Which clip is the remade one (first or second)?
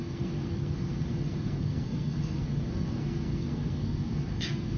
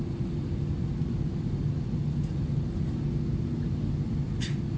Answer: first